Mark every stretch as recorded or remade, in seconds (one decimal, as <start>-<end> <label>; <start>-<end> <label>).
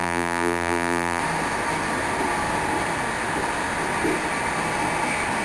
0.0-1.2 remade; 1.2-5.4 recorded